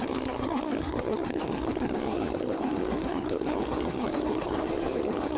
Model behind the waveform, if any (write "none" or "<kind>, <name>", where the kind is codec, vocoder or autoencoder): codec, SNAC